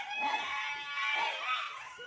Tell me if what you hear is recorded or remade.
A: recorded